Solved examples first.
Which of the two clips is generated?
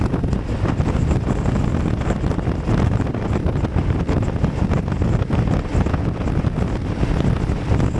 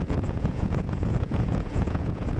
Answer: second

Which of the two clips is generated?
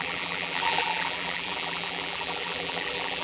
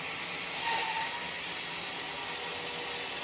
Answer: first